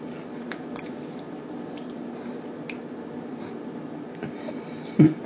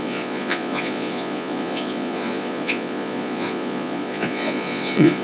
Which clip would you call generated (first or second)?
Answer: second